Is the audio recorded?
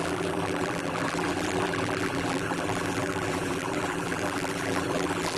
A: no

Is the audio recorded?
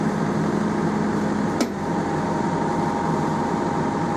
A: yes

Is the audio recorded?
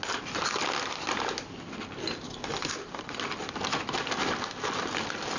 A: yes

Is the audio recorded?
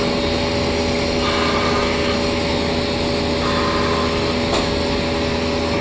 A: yes